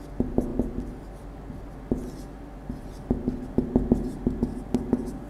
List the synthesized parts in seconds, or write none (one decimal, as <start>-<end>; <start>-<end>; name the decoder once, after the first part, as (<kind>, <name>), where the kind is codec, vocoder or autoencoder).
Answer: none